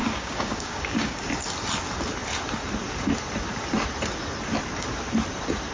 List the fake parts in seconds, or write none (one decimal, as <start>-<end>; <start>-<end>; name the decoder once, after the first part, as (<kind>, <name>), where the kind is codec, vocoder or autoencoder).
0.0-1.3 (codec, DAC)

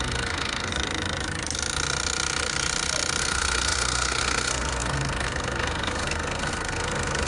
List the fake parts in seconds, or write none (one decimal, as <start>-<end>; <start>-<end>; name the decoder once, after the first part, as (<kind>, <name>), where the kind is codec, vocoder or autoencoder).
0.0-0.7 (codec, SNAC); 3.2-7.3